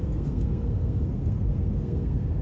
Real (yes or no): no